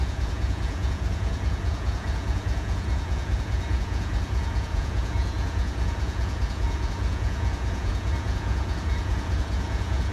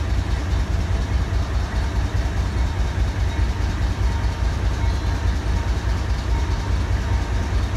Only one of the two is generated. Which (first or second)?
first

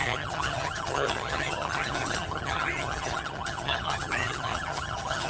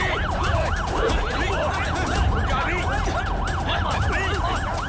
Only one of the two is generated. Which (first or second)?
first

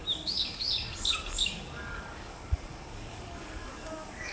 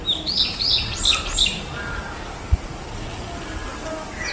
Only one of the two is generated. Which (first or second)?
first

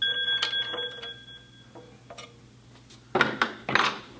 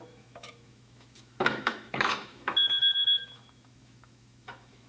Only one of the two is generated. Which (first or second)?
second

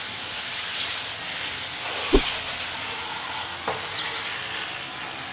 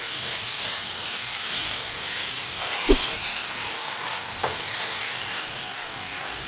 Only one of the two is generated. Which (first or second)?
second